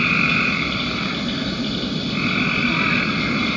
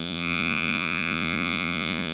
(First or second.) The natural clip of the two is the first